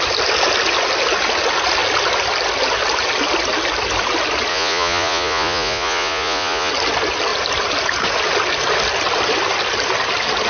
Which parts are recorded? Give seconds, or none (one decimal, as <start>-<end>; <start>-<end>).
0.0-4.5; 6.7-10.5